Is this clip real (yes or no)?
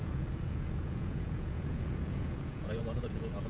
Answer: no